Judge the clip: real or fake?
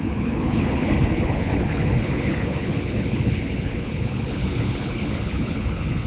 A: fake